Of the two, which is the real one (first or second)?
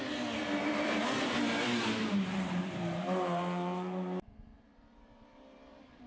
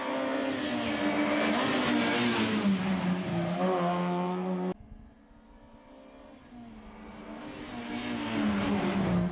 second